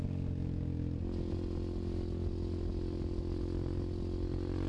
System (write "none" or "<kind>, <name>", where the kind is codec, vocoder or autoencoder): none